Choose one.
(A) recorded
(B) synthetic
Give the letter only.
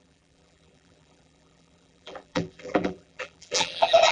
B